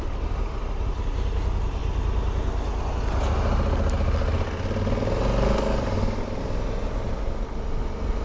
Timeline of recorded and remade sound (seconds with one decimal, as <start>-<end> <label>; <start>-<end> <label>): 0.0-8.2 recorded

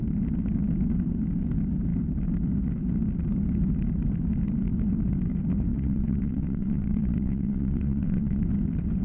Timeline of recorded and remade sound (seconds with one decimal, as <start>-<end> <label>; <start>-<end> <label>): 0.0-5.7 recorded; 5.7-8.4 remade; 8.4-9.0 recorded

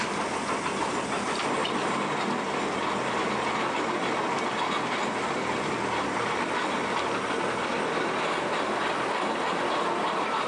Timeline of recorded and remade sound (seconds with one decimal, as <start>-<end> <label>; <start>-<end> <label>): 0.0-10.5 recorded